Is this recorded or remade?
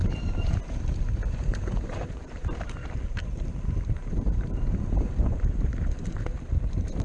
remade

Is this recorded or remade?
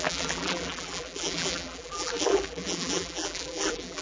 remade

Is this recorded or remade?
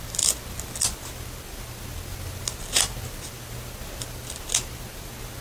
recorded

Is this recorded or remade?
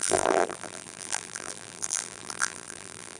remade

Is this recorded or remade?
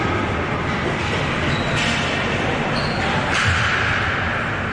recorded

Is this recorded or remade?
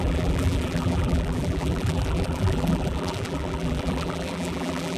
remade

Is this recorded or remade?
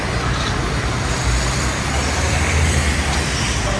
remade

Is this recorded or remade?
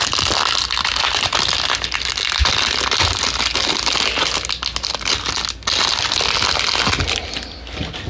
recorded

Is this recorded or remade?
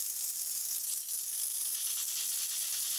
remade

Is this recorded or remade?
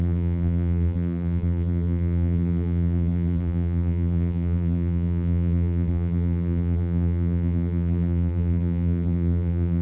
remade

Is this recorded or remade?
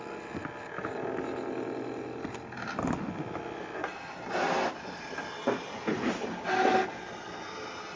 recorded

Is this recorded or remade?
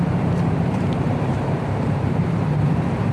remade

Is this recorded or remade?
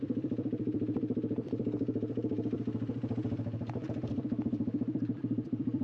remade